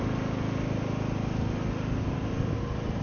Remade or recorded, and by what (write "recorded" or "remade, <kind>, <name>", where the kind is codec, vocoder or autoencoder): recorded